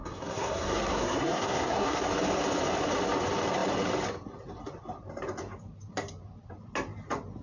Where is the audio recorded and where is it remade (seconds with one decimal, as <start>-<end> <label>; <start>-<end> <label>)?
0.0-2.0 remade; 2.0-7.4 recorded